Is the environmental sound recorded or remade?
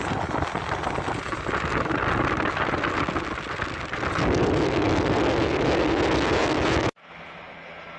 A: recorded